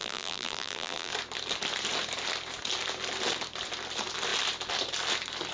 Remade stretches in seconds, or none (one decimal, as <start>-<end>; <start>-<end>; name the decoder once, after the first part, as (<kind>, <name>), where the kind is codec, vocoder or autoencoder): 0.0-1.1 (vocoder, BigVGAN v2)